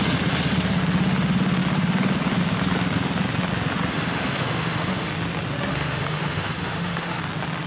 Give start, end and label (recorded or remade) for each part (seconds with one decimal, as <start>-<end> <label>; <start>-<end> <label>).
0.0-3.9 recorded; 3.9-5.1 remade; 5.1-5.7 recorded; 5.7-7.2 remade; 7.2-7.7 recorded